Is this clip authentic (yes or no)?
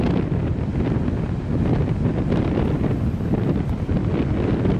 yes